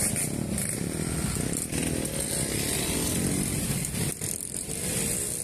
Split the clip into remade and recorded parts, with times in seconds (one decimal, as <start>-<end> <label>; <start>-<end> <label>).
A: 0.0-5.4 recorded